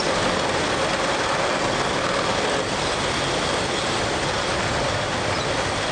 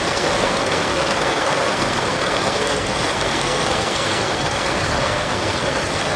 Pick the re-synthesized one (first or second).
second